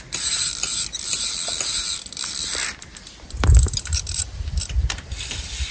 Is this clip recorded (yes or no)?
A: no